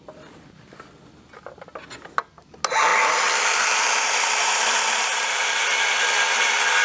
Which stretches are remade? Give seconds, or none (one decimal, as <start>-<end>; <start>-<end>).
2.9-6.0